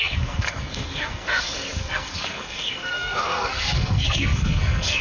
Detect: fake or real fake